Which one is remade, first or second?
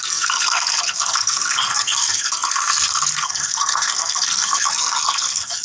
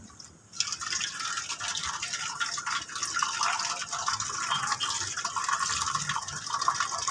first